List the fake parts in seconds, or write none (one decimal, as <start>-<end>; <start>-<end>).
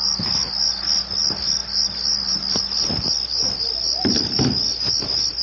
none